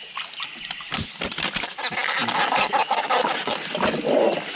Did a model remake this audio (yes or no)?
no